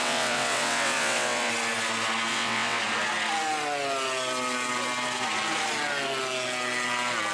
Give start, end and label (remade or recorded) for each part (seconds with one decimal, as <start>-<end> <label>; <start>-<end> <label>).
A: 0.0-1.5 remade; 1.5-2.3 recorded; 2.3-2.8 remade; 2.8-7.3 recorded